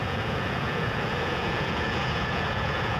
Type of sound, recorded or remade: remade